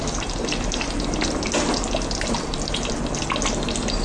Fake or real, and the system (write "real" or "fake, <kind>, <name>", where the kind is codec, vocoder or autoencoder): real